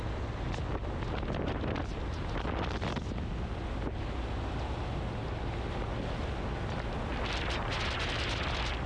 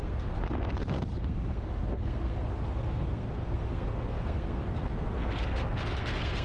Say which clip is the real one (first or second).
first